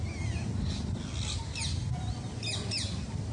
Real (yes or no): yes